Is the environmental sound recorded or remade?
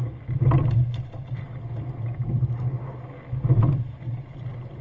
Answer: recorded